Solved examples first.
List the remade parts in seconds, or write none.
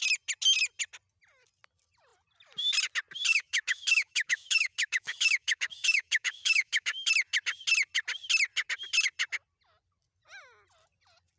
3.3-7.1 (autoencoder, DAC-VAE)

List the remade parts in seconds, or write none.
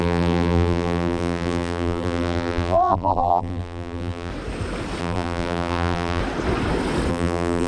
0.0-4.3 (vocoder, BigVGAN v2); 5.0-6.2; 7.1-7.7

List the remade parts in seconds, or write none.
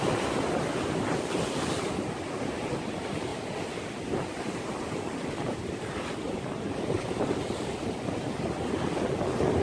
none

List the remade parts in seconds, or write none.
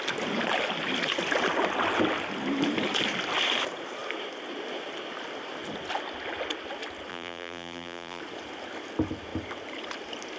7.1-8.2 (vocoder, BigVGAN v2)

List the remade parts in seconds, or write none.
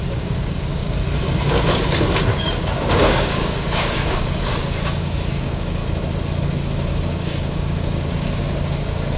0.0-0.8 (codec, DAC); 2.8-5.8; 6.6-9.2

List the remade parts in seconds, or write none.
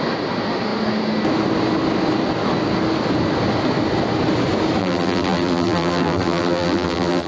4.8-7.3 (vocoder, BigVGAN v2)